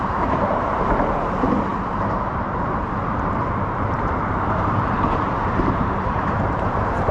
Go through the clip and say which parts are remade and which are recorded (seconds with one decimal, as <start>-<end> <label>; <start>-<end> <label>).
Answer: 0.0-7.1 remade